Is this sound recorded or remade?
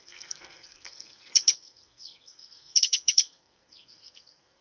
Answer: remade